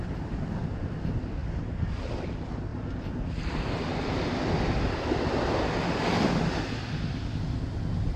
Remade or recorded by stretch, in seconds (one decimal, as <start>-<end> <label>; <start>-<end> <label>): 0.0-8.2 recorded